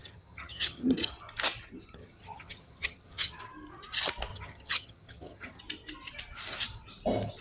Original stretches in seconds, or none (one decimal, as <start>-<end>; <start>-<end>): 1.1-2.0; 3.4-4.3; 5.6-7.4